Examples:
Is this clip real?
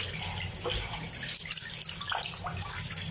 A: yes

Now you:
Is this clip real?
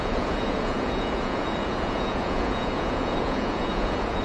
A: no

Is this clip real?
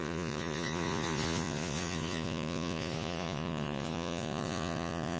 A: no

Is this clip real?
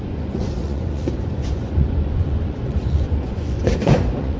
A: no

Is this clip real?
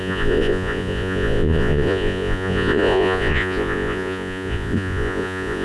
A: no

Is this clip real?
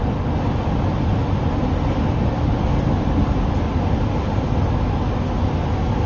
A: yes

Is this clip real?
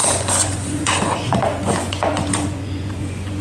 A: no